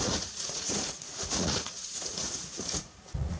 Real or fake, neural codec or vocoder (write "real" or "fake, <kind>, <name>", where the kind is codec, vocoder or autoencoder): fake, vocoder, Vocos